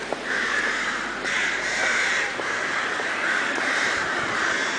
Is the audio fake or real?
fake